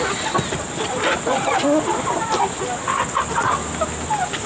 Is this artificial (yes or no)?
no